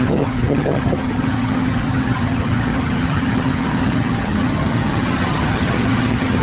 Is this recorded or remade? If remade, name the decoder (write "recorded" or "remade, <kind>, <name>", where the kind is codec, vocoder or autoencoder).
remade, vocoder, HiFi-GAN